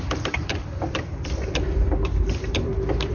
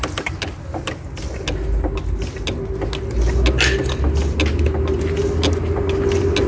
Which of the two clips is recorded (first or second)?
second